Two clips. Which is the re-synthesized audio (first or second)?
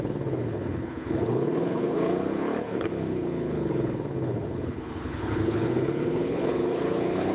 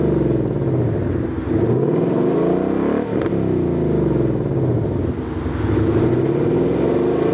first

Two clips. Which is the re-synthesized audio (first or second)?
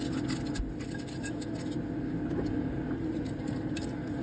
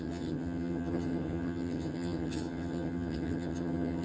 second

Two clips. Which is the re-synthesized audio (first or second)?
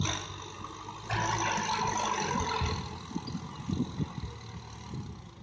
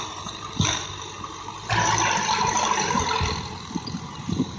second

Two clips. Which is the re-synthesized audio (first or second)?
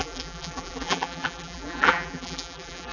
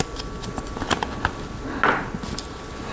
first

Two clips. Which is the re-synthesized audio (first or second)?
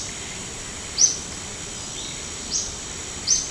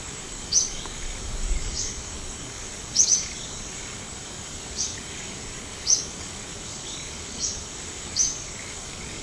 second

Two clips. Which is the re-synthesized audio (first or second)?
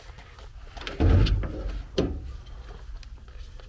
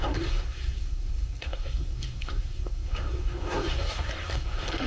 second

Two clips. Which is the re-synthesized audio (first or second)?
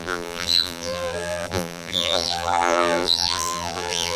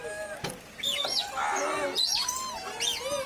first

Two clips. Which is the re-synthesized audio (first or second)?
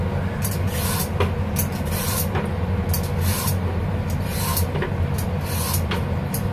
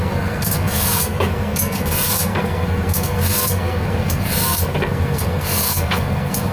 second